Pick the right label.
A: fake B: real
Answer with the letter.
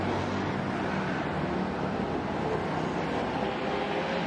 B